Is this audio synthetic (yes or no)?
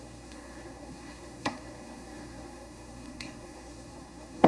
yes